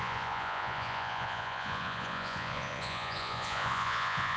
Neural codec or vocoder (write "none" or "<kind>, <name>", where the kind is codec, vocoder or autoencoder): vocoder, Vocos